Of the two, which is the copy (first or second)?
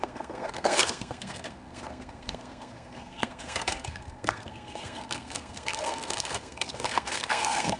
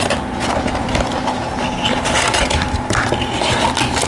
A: first